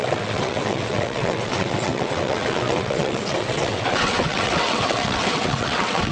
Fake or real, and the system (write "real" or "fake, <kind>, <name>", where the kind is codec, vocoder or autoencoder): fake, vocoder, WaveNeXt